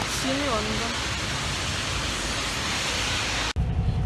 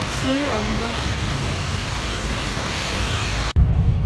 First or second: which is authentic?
first